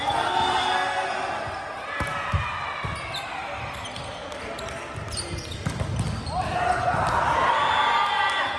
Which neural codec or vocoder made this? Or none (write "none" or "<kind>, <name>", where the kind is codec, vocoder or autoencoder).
none